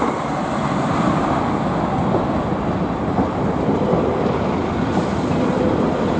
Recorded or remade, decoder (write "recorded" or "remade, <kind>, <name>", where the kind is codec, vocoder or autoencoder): recorded